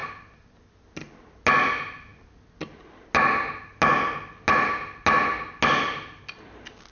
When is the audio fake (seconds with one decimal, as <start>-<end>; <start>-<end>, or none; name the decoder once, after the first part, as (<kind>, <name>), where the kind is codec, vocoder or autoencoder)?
none